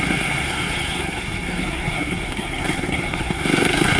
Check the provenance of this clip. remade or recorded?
remade